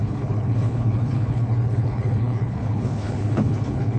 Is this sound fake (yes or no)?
yes